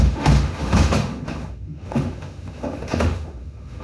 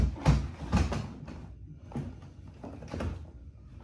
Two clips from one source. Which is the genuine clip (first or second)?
second